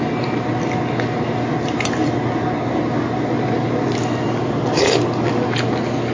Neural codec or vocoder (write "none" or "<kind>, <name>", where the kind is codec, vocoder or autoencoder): none